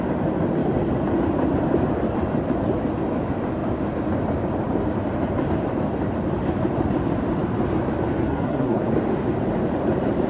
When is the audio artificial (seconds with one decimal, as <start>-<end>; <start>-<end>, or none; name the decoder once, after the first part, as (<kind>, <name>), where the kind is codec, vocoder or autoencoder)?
8.2-8.8 (codec, SNAC)